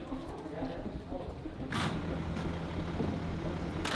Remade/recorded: recorded